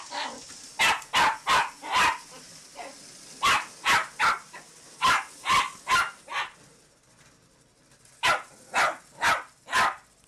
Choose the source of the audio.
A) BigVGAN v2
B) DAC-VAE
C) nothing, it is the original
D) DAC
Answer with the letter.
C